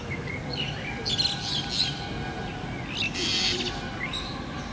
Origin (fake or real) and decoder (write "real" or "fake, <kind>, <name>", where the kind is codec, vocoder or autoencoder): real